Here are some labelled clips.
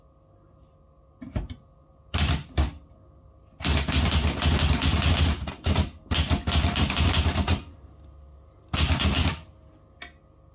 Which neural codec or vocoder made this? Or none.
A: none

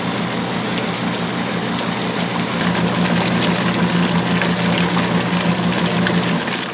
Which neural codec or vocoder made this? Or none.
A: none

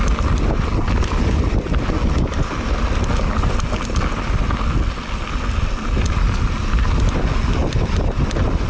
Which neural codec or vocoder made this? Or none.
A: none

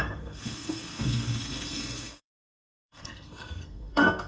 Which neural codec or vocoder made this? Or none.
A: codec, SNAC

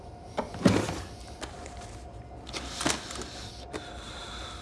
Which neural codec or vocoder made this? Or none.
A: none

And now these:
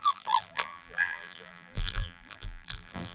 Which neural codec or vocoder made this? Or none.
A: vocoder, BigVGAN v2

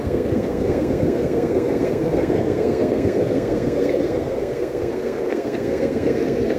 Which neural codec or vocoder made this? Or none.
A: codec, SNAC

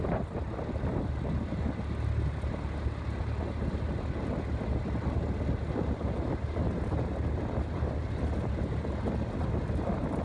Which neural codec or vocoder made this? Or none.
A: none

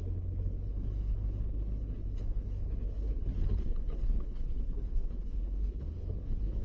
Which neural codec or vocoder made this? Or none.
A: codec, HILCodec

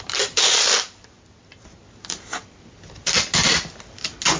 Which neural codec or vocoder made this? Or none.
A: none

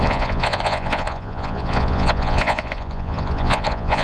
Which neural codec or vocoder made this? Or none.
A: vocoder, Vocos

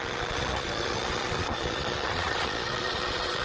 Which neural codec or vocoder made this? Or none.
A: vocoder, Vocos